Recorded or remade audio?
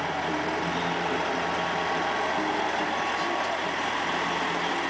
recorded